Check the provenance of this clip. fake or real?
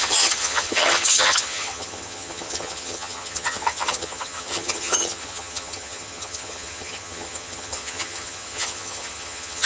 fake